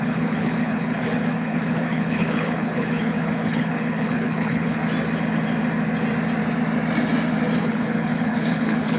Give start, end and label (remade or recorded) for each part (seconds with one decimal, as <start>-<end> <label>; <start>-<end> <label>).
0.0-4.8 remade; 4.8-7.6 recorded; 7.6-9.0 remade

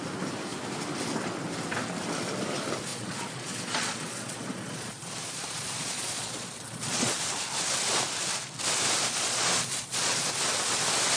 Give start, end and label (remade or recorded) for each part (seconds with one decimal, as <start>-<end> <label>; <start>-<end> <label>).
0.0-2.9 recorded; 2.9-7.2 remade; 7.2-9.0 recorded; 9.0-10.3 remade; 10.3-11.2 recorded

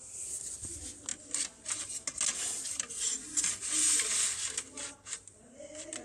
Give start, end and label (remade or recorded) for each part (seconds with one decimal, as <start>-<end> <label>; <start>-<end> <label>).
0.0-6.0 recorded

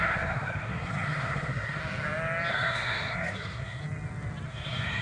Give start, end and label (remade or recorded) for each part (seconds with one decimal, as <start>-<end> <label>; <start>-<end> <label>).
0.0-1.8 remade; 1.8-2.5 recorded; 2.5-3.8 remade; 3.8-4.5 recorded; 4.5-5.0 remade

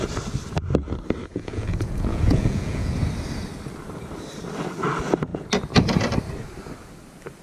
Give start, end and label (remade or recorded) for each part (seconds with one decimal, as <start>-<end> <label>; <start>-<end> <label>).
0.0-1.3 recorded; 1.3-2.9 remade; 2.9-7.4 recorded

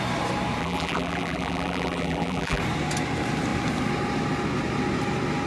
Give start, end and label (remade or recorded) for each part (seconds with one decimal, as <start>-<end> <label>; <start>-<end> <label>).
0.0-0.6 recorded; 0.6-2.6 remade; 2.6-5.5 recorded